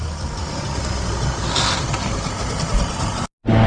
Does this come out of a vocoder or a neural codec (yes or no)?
no